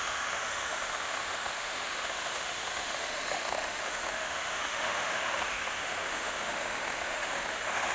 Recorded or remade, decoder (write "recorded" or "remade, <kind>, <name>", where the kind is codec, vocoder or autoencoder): remade, autoencoder, DAC-VAE